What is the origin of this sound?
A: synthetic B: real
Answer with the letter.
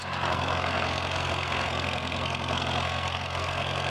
A